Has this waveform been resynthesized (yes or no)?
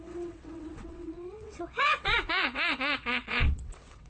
yes